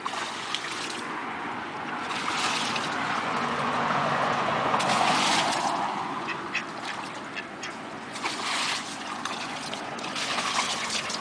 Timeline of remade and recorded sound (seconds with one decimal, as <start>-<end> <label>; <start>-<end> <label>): 0.0-6.6 remade; 6.6-7.5 recorded; 7.5-11.2 remade